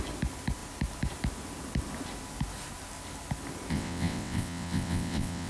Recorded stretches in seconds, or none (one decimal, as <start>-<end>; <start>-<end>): 0.0-3.7